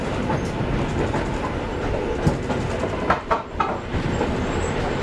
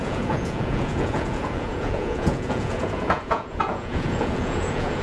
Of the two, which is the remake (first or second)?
second